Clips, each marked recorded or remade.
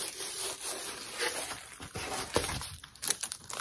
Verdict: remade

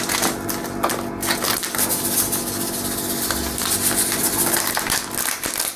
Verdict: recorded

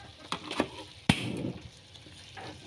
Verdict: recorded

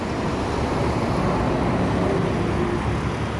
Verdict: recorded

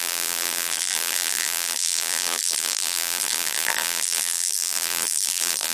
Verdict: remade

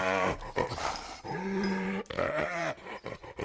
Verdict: remade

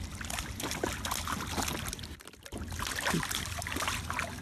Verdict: recorded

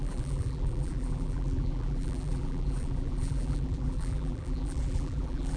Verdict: remade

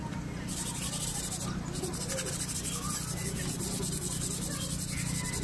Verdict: recorded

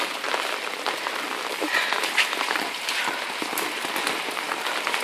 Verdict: recorded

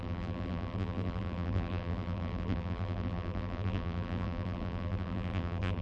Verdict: remade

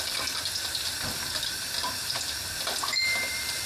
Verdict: remade